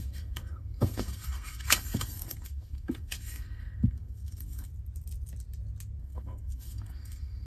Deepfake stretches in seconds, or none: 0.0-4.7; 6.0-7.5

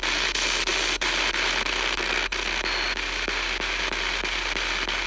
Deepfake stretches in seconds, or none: none

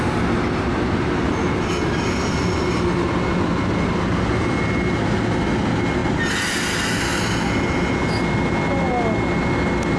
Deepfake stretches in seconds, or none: none

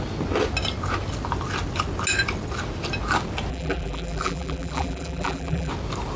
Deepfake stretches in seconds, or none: 3.5-5.7

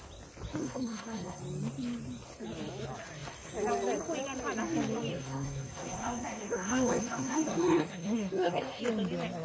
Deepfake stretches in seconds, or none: 0.6-1.4; 5.1-8.8

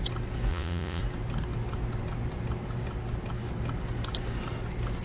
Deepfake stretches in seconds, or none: 0.5-1.0

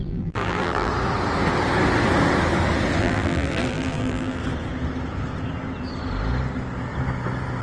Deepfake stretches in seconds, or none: 0.0-0.9; 3.0-4.4

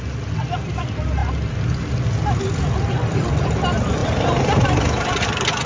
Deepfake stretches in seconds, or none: 4.0-4.6